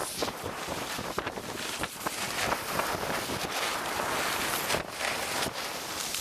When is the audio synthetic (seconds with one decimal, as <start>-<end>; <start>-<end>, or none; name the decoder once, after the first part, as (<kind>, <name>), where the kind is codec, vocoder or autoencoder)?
0.0-2.9 (vocoder, BigVGAN v2)